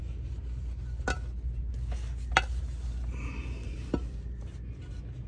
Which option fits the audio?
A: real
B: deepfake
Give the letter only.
A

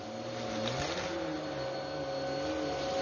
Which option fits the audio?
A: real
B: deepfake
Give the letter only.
A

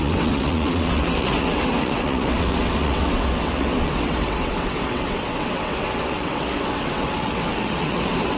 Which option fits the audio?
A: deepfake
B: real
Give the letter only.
A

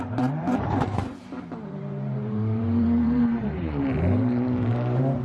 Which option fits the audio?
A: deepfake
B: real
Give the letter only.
A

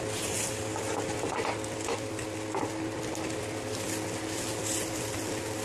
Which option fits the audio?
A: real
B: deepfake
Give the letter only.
A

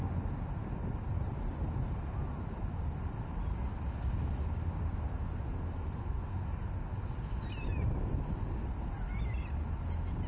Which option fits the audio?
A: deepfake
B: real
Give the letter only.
B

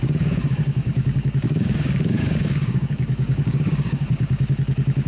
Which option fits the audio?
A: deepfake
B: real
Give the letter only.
A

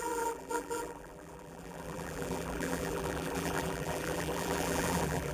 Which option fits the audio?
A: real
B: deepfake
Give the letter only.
B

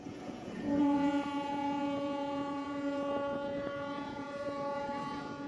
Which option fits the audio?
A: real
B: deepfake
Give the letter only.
B